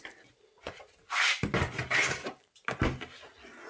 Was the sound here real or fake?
real